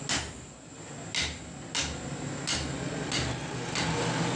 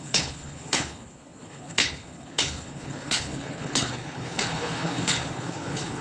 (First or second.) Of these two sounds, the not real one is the second